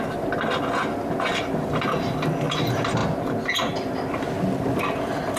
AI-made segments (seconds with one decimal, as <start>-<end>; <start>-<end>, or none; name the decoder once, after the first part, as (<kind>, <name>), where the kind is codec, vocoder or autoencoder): none